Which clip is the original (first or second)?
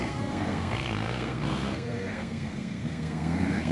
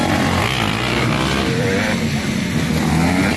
second